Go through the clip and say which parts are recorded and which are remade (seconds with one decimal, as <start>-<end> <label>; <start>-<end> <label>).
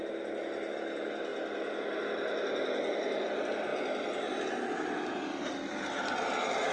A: 0.0-6.7 recorded